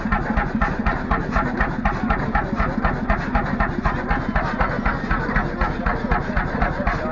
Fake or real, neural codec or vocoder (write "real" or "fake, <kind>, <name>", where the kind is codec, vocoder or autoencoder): real